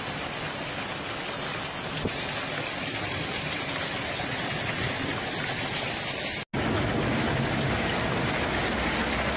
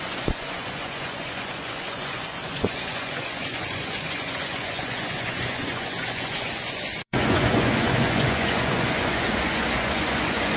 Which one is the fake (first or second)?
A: second